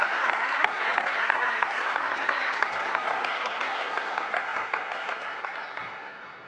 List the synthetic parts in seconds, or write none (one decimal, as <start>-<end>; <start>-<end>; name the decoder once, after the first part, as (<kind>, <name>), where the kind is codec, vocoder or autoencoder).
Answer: 0.0-6.5 (codec, SNAC)